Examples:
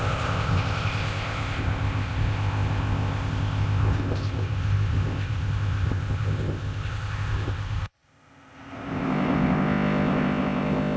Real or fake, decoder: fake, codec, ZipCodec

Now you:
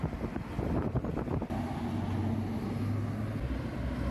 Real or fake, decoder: real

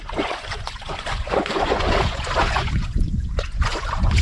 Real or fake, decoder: fake, vocoder, Vocos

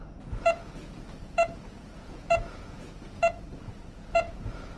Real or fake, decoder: fake, vocoder, Vocos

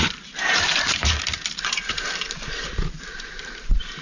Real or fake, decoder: fake, vocoder, BigVGAN v2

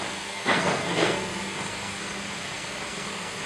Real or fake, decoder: fake, codec, SNAC